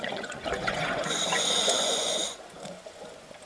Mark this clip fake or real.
fake